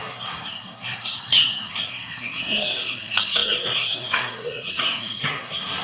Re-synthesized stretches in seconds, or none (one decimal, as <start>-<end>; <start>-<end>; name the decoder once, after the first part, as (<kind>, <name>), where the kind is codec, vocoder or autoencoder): 0.0-5.8 (codec, SNAC)